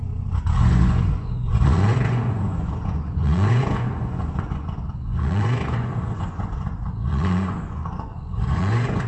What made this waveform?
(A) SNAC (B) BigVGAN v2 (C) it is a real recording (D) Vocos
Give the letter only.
D